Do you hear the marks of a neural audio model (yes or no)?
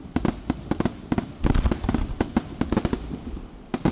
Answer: yes